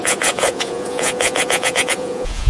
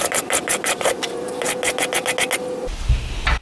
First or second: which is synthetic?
first